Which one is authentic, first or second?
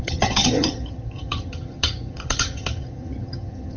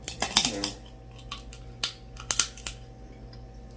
second